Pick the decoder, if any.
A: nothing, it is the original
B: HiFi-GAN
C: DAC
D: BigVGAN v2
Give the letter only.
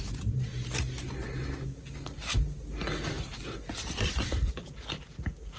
A